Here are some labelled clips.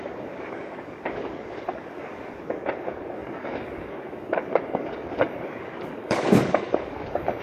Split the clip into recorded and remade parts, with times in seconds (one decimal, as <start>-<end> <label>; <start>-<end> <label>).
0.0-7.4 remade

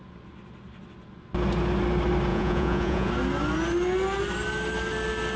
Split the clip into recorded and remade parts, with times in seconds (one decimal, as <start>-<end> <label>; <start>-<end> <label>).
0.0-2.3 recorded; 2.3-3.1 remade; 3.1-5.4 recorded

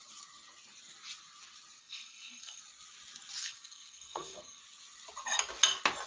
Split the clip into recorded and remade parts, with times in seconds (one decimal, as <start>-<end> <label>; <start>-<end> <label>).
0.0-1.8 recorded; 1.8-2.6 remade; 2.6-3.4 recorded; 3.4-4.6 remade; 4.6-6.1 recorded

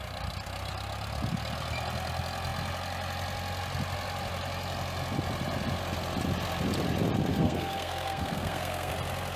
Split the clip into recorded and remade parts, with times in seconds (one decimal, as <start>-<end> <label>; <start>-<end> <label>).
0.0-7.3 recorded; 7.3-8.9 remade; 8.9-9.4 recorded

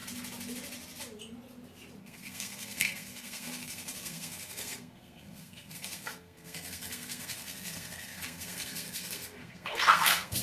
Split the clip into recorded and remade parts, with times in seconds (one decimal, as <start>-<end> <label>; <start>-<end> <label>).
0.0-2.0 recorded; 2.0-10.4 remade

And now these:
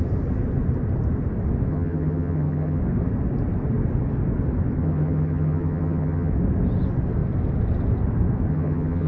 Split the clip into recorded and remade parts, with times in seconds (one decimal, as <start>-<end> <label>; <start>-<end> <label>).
0.0-1.7 recorded; 1.7-2.8 remade; 2.8-4.8 recorded; 4.8-6.3 remade; 6.3-8.5 recorded; 8.5-9.1 remade

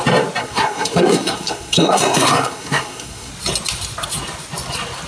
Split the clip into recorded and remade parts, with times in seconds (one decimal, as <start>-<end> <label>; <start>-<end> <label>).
0.0-0.4 recorded; 0.4-3.3 remade; 3.3-5.1 recorded

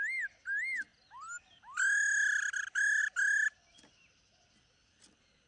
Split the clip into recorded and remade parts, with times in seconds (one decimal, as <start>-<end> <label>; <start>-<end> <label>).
0.0-5.5 recorded